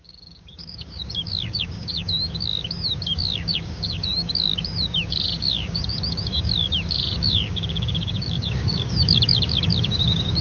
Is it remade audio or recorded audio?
remade